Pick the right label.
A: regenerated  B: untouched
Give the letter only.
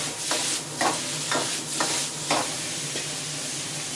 B